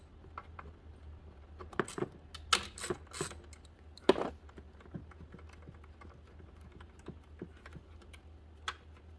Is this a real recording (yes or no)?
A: yes